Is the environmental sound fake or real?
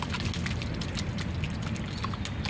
real